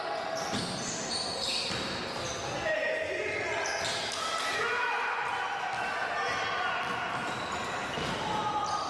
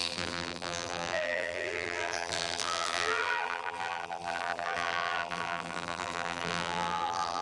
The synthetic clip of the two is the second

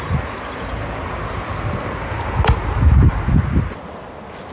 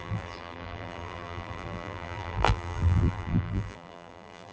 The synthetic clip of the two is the second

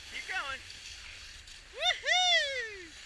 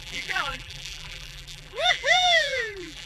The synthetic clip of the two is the second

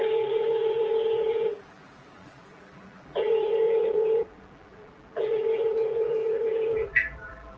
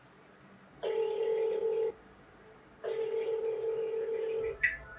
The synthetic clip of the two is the first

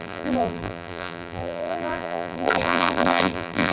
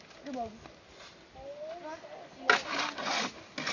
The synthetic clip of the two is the first